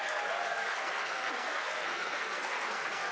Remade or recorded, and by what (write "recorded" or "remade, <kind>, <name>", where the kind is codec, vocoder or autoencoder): remade, codec, SNAC